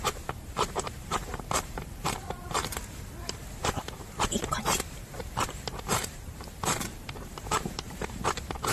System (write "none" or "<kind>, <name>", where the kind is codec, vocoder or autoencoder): vocoder, BigVGAN v2